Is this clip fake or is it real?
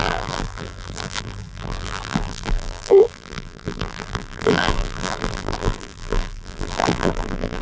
fake